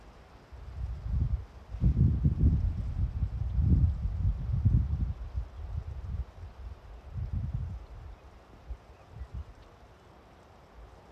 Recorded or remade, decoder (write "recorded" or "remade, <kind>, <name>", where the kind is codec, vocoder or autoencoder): recorded